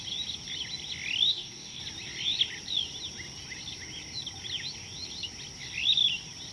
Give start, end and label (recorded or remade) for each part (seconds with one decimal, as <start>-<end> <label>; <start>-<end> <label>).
0.0-1.3 recorded; 1.3-1.8 remade; 1.8-6.5 recorded